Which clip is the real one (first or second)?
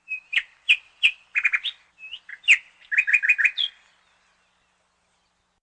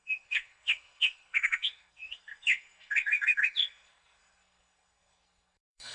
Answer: first